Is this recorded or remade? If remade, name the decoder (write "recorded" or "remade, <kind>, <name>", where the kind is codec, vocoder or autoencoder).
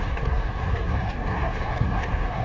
remade, codec, SNAC